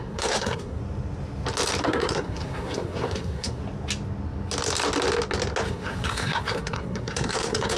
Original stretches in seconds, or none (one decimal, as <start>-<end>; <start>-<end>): 0.8-1.8; 3.6-5.7